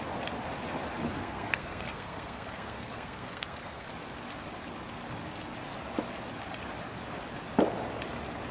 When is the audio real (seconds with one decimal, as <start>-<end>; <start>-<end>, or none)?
0.0-1.2; 3.9-8.5